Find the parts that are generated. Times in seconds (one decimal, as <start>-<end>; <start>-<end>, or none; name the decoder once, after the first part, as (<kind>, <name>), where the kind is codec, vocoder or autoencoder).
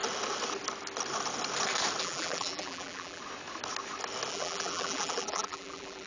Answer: 2.0-3.2 (vocoder, BigVGAN v2); 4.3-6.1